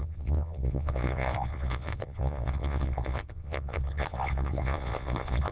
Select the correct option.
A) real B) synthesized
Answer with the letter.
B